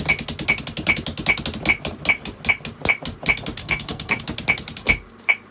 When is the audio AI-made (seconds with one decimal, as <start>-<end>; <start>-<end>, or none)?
3.6-4.2